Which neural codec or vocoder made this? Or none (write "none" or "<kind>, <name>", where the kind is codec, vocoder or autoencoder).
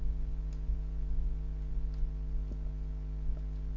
none